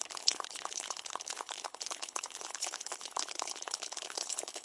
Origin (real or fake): fake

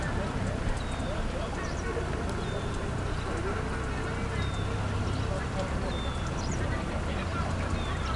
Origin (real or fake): real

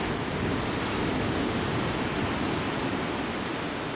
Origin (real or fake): real